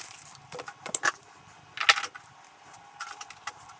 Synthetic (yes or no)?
no